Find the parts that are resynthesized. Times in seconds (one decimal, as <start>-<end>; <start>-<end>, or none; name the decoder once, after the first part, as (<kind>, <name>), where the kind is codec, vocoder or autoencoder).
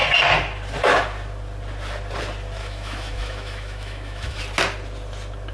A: 2.6-4.4 (autoencoder, DAC-VAE)